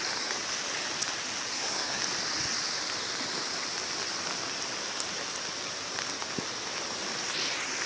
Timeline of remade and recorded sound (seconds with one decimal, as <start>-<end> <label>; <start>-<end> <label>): 0.0-1.5 recorded; 1.5-2.0 remade; 2.0-7.9 recorded